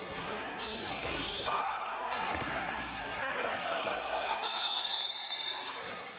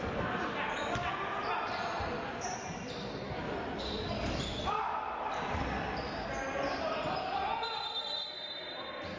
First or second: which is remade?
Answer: first